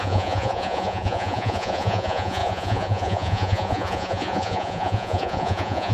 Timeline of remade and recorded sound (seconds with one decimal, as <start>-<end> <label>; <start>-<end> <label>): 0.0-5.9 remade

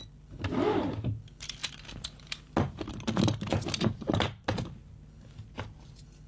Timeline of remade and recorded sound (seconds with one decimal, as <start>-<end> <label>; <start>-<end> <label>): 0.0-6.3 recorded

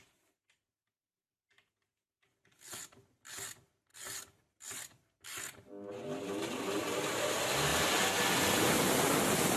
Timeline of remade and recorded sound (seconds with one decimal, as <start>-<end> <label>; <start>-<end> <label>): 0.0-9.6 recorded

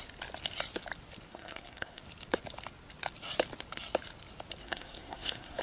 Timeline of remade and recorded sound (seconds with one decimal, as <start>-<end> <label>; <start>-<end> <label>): 0.0-1.3 recorded; 1.3-2.0 remade; 2.0-4.6 recorded; 4.6-5.6 remade

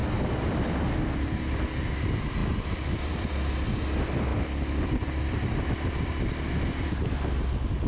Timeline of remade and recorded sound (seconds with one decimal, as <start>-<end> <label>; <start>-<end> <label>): 0.0-0.9 remade; 0.9-2.4 recorded; 2.4-3.3 remade; 3.3-4.3 recorded; 4.3-5.7 remade; 5.7-7.9 recorded

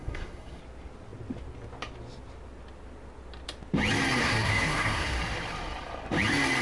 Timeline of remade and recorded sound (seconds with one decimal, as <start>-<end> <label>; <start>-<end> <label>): 0.0-0.6 remade; 0.6-4.2 recorded; 4.2-5.2 remade; 5.2-6.6 recorded